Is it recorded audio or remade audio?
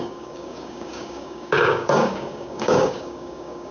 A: remade